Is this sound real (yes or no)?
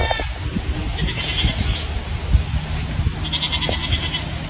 yes